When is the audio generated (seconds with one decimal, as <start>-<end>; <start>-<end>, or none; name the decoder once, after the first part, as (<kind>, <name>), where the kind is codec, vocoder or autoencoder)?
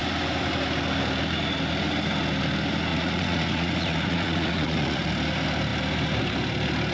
2.9-5.1 (vocoder, Vocos)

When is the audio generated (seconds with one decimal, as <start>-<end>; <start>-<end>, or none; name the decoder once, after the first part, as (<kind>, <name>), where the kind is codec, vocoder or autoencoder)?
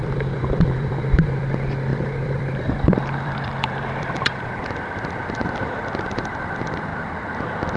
0.0-6.9 (vocoder, BigVGAN v2)